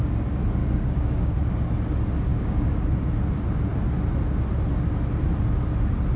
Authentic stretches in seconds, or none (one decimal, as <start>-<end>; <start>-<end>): 0.0-0.6; 1.5-2.3; 2.9-6.2